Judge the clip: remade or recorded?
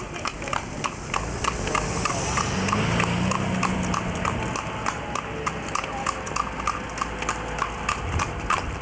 recorded